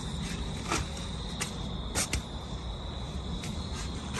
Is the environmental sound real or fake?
real